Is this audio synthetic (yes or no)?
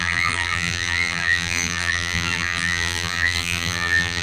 yes